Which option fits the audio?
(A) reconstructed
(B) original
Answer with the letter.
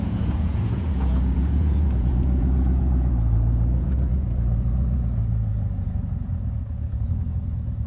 A